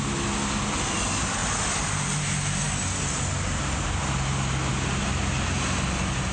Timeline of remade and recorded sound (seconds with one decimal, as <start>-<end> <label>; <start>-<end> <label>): 0.0-6.3 recorded